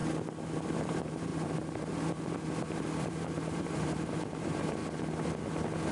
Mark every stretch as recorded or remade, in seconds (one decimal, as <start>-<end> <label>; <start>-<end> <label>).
0.0-0.7 recorded; 0.7-4.8 remade; 4.8-5.9 recorded